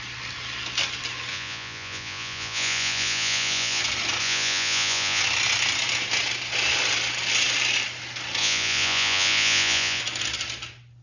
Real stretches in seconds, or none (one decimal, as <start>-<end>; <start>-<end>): 0.0-1.3; 3.8-4.2; 5.2-8.4; 10.0-11.0